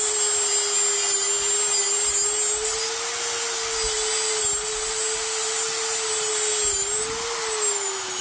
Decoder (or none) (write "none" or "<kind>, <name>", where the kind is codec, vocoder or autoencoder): none